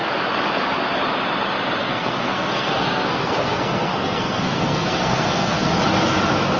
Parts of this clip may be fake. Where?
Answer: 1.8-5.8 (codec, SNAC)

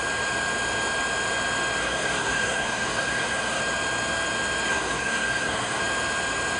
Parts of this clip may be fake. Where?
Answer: 1.8-3.6 (codec, SNAC); 4.7-5.8

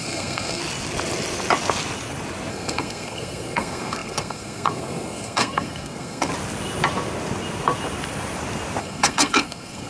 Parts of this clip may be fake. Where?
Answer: 0.0-0.6 (codec, SNAC); 2.5-6.3; 8.8-9.9

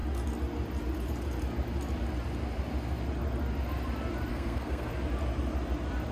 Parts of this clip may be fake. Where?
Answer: 4.3-4.9 (codec, SNAC)